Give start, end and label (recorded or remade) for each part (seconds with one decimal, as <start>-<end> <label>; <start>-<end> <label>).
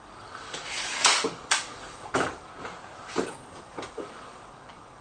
0.0-2.5 remade; 2.5-3.3 recorded; 3.3-5.0 remade